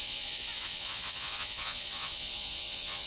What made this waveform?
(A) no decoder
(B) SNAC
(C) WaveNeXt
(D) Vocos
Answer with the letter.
D